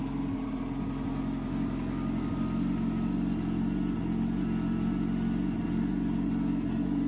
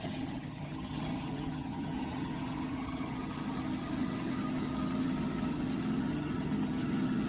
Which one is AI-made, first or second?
second